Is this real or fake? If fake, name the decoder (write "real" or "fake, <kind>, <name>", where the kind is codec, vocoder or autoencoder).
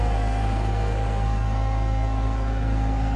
fake, codec, SNAC